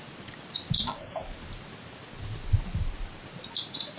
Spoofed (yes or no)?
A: no